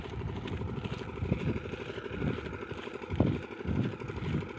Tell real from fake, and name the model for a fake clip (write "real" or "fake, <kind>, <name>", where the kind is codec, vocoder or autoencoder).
real